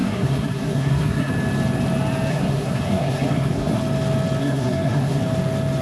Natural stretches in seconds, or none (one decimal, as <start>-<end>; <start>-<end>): 1.3-2.3; 3.8-4.4; 5.2-5.8